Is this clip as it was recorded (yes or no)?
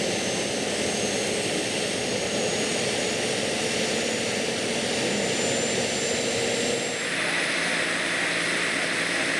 yes